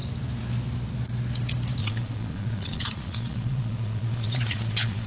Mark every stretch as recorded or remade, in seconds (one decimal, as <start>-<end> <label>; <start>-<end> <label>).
0.0-1.8 recorded; 1.8-5.1 remade